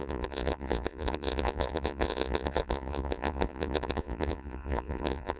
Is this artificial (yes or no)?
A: yes